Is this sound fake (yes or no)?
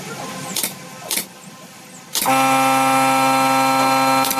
no